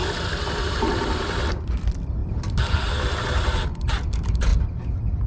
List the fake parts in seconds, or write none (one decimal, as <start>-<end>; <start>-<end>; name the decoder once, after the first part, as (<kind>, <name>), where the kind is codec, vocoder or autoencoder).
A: 0.7-4.5 (vocoder, BigVGAN v2)